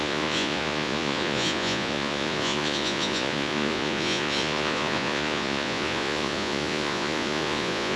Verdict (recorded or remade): remade